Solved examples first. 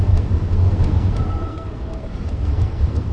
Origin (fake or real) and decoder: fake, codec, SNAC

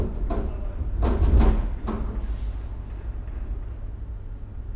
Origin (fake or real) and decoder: real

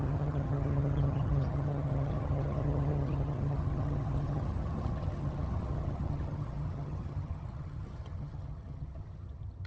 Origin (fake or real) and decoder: fake, vocoder, HiFi-GAN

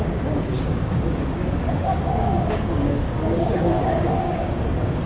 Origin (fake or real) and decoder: fake, codec, DAC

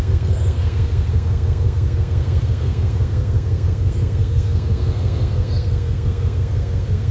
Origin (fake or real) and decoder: fake, codec, SNAC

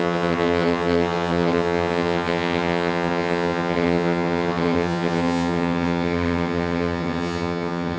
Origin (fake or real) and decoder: fake, vocoder, HiFi-GAN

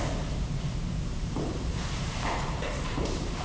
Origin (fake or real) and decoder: fake, vocoder, BigVGAN v2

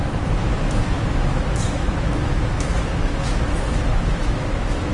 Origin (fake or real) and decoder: fake, autoencoder, DAC-VAE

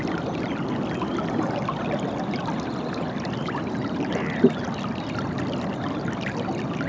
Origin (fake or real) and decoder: real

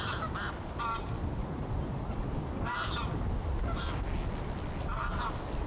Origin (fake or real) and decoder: real